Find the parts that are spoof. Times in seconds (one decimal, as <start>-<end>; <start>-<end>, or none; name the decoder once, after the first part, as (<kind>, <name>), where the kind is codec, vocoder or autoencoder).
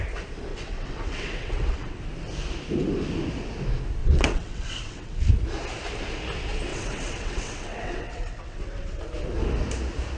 0.5-2.0 (vocoder, WaveNeXt); 4.0-5.3; 6.7-9.0